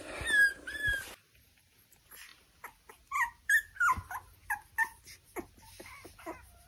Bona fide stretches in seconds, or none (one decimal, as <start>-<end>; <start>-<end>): 0.0-6.7